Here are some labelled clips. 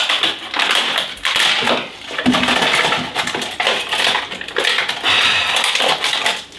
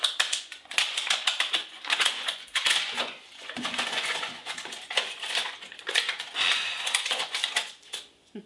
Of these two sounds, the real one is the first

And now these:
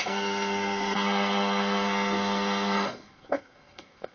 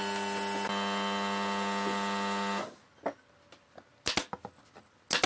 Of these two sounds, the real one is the second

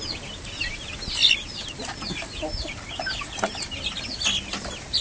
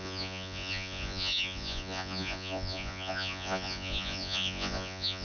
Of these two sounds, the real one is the first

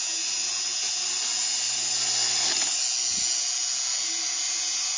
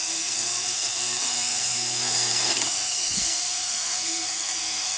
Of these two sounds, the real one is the first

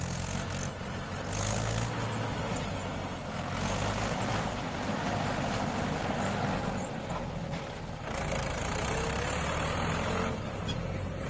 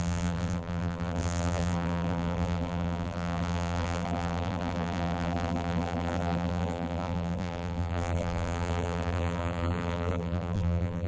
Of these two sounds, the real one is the first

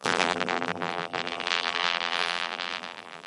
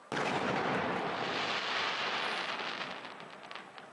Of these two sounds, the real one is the second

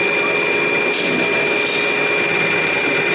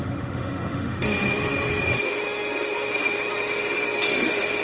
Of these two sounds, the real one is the first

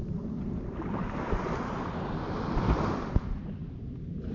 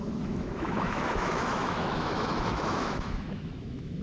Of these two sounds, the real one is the first